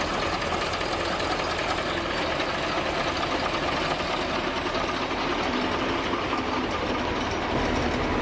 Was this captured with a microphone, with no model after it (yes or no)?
yes